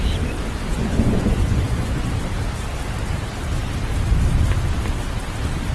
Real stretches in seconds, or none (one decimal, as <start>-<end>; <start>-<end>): 0.0-0.7; 2.1-5.7